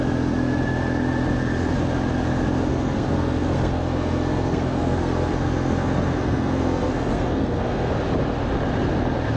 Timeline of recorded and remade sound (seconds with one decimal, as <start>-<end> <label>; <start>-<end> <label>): 0.0-2.7 recorded; 2.7-7.9 remade; 7.9-9.4 recorded